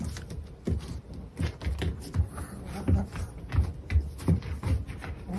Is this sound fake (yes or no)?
no